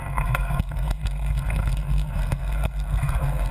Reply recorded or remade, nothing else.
remade